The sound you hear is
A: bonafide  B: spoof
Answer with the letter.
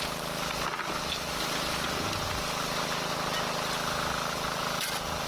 A